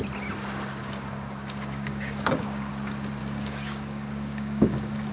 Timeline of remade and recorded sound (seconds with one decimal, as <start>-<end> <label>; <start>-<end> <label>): 0.0-0.8 recorded; 0.8-2.7 remade; 2.7-3.2 recorded; 3.2-5.1 remade